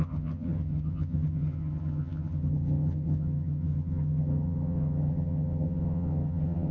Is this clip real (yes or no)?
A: no